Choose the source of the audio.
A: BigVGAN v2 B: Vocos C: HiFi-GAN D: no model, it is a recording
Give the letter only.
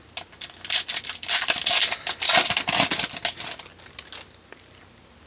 D